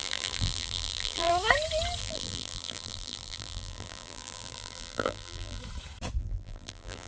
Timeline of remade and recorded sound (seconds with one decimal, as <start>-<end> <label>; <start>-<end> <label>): 0.0-1.3 remade; 1.3-2.0 recorded; 2.0-5.6 remade; 5.6-6.2 recorded; 6.2-7.1 remade